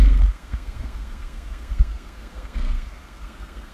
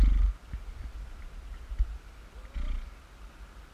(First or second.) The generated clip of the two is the first